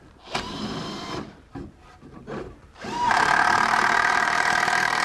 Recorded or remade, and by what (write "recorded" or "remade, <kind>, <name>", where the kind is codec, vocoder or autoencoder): remade, vocoder, BigVGAN v2